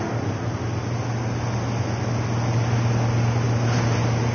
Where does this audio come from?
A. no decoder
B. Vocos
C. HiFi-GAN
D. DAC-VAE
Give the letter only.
A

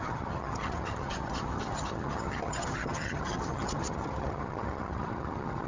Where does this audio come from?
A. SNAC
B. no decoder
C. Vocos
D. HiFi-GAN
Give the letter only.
D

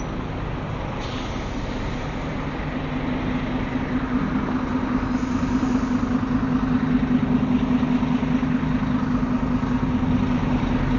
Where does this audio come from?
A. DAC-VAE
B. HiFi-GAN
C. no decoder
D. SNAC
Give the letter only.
C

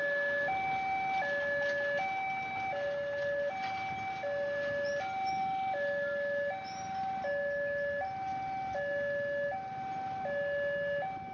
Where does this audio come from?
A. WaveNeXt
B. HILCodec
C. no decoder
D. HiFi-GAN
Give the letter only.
C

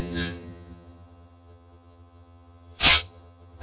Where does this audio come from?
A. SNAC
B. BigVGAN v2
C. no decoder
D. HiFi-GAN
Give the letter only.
D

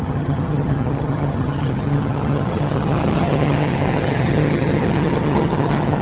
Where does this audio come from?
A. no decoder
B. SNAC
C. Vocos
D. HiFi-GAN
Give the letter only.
D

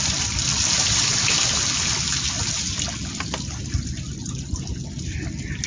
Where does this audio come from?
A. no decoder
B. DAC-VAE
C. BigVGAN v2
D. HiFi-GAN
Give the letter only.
A